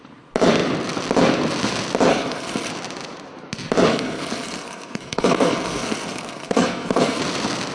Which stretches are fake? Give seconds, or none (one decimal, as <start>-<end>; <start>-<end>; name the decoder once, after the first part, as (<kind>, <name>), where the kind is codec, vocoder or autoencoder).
2.1-2.7 (codec, SNAC); 3.9-7.2